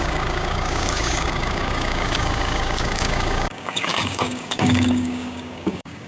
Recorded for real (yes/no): no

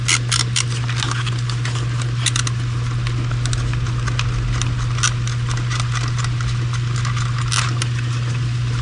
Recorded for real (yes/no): yes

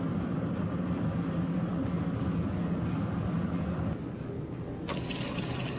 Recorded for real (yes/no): yes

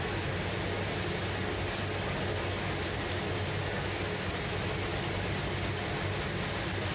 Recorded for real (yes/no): yes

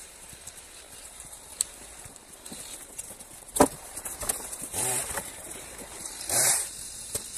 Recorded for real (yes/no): no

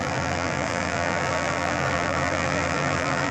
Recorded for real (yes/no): no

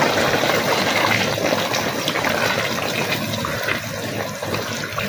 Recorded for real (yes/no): yes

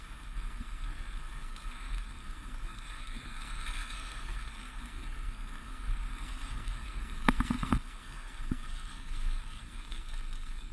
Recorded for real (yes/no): no